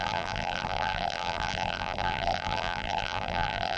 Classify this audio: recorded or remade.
remade